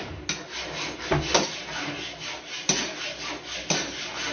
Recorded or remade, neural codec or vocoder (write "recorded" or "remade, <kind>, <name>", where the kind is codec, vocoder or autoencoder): recorded